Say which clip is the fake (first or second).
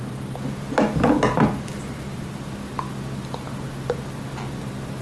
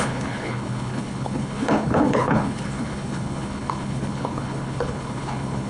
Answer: second